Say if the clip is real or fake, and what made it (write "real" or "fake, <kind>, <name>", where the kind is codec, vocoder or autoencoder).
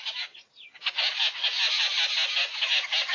real